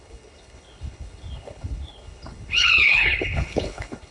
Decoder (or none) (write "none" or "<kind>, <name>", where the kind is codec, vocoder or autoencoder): codec, HILCodec